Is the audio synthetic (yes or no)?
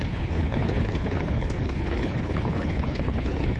yes